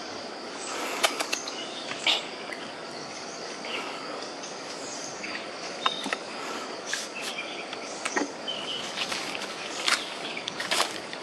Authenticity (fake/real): fake